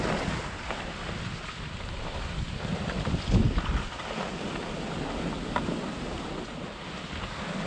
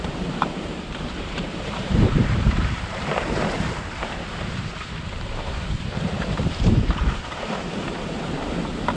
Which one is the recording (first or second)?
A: first